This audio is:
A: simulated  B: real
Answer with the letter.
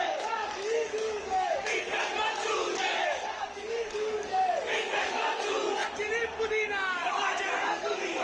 A